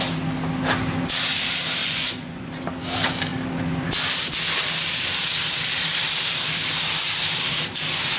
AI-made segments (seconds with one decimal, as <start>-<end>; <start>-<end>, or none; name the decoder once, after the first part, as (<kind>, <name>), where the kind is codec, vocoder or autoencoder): 1.8-2.5 (vocoder, Vocos)